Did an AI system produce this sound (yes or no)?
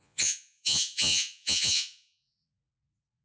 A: yes